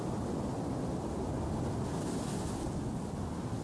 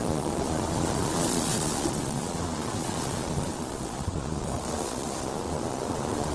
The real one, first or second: first